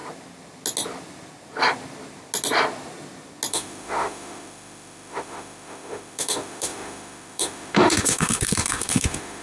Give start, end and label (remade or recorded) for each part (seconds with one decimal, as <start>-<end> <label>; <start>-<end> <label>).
0.0-3.5 recorded; 3.5-9.4 remade